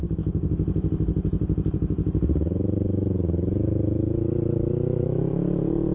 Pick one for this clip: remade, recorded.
remade